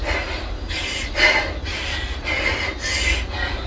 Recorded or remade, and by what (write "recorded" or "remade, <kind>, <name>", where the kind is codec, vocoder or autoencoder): recorded